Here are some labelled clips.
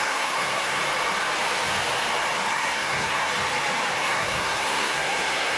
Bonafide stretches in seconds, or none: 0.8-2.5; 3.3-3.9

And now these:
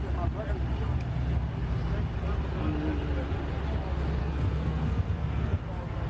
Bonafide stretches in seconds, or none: 0.0-4.2; 5.6-6.1